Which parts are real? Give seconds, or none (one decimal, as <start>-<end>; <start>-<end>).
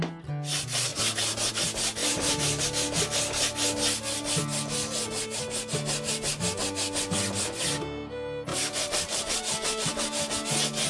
0.0-2.0; 2.6-8.5; 10.3-10.9